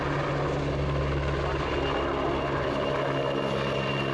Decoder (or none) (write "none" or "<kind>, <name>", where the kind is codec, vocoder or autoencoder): none